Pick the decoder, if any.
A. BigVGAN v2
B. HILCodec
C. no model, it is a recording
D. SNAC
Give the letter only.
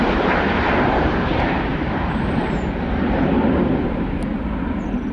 A